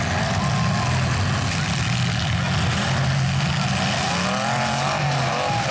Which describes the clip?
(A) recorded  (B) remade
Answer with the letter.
A